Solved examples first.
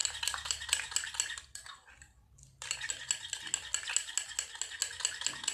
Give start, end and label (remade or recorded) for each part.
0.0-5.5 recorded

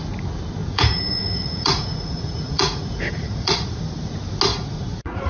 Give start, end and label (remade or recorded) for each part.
0.0-0.6 recorded; 0.6-3.8 remade; 3.8-4.5 recorded; 4.5-5.3 remade

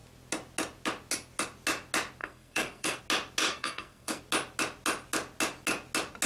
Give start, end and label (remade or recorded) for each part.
0.0-2.2 recorded; 2.2-3.0 remade; 3.0-3.4 recorded; 3.4-4.2 remade; 4.2-6.3 recorded